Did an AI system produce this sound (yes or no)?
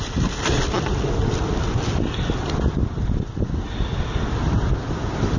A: no